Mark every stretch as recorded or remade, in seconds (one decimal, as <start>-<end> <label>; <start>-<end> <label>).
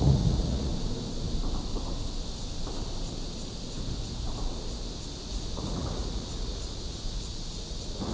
0.0-0.7 remade; 0.7-5.3 recorded; 5.3-8.1 remade